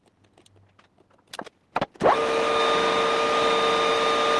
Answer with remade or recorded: recorded